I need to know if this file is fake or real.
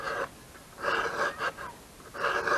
real